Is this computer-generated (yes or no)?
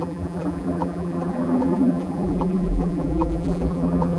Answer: yes